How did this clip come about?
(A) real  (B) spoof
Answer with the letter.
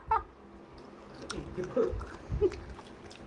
A